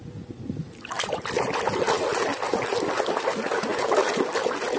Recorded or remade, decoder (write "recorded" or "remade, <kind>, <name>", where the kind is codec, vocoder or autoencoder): recorded